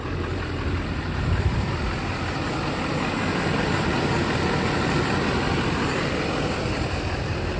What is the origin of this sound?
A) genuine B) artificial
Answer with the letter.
B